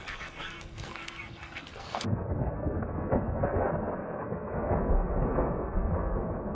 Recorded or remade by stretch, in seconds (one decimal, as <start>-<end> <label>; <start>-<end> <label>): 0.0-6.5 remade